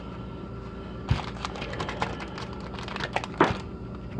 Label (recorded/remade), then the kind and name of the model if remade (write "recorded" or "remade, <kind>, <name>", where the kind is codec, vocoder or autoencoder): recorded